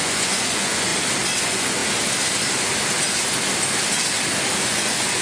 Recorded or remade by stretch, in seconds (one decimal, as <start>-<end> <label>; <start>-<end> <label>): 0.0-0.9 remade; 0.9-1.4 recorded; 1.4-1.8 remade; 1.8-4.6 recorded; 4.6-5.2 remade